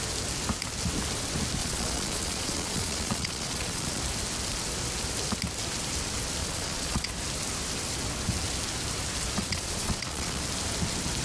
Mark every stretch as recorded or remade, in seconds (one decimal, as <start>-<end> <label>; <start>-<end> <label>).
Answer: 0.0-1.6 recorded; 1.6-4.0 remade; 4.0-6.4 recorded; 6.4-7.1 remade; 7.1-9.4 recorded; 9.4-10.4 remade; 10.4-11.2 recorded